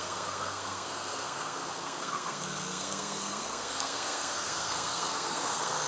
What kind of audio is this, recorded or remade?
remade